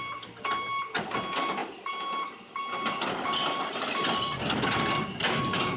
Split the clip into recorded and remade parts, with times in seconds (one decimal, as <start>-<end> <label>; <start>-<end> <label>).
0.0-5.8 recorded